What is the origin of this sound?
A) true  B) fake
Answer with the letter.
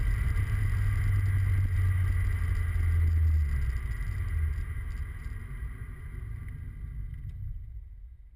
A